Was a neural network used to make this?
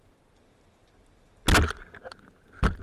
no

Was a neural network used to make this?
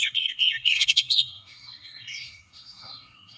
yes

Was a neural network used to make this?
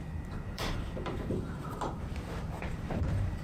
yes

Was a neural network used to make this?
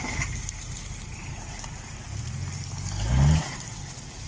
no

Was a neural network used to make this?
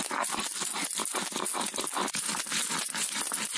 no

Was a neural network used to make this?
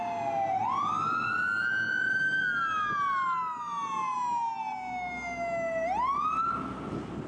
no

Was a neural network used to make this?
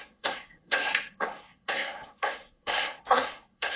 yes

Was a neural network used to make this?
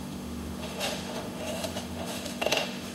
yes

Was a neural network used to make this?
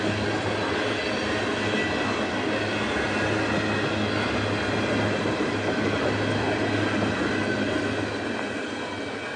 no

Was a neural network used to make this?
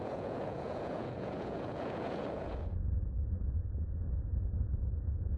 yes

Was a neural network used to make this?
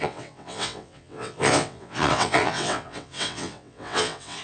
yes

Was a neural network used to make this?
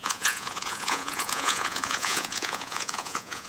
yes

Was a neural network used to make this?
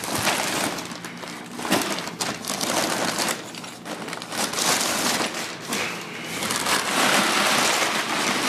no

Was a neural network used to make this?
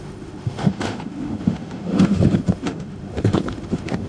yes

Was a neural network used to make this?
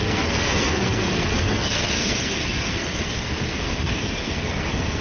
yes